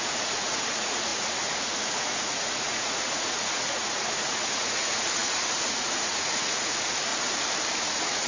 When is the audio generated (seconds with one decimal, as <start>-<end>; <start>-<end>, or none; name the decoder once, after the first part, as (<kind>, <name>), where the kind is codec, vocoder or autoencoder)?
0.0-7.1 (vocoder, Vocos); 7.8-8.3